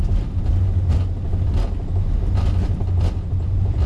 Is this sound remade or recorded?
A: recorded